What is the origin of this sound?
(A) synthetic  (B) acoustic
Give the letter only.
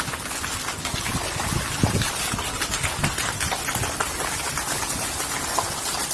B